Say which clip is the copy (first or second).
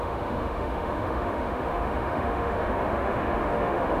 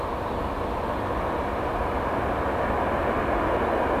first